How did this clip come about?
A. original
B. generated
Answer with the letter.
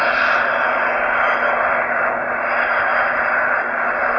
A